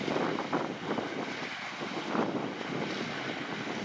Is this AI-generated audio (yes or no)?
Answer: no